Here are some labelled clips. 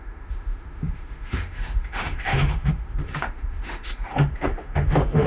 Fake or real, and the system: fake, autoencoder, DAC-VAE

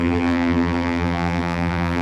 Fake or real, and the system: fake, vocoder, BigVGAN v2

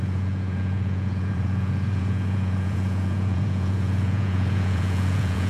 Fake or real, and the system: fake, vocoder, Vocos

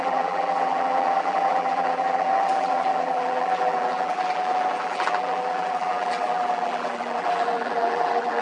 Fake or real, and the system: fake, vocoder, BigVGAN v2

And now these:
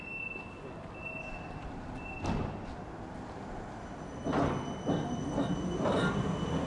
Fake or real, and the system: real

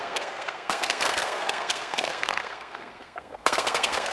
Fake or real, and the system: fake, codec, SNAC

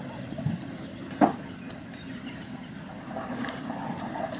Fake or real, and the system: real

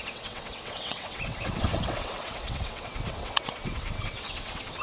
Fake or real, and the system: fake, vocoder, WaveNeXt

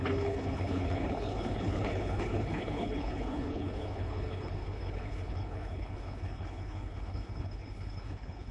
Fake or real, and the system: fake, codec, HILCodec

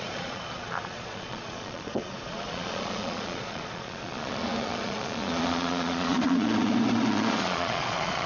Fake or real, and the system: fake, vocoder, Vocos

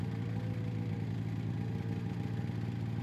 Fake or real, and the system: real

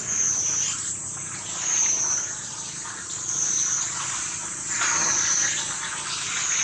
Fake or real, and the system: real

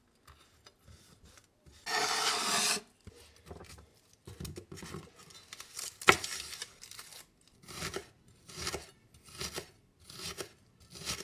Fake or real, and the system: real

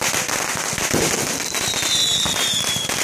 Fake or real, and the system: real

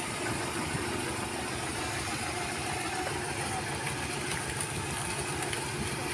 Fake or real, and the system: real